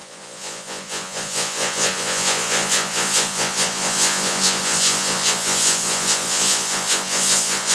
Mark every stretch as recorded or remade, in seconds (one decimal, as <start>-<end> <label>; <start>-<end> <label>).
0.0-7.7 remade